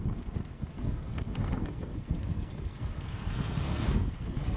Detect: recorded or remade remade